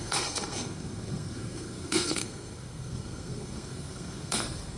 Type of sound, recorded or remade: remade